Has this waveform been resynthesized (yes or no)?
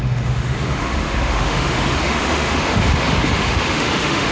yes